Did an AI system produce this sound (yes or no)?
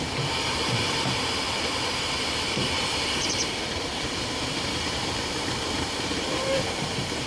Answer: yes